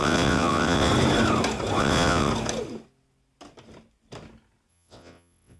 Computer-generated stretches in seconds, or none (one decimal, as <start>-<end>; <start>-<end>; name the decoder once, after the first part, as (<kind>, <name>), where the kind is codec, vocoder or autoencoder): 0.0-0.9 (vocoder, WaveNeXt); 1.8-2.3; 4.7-5.6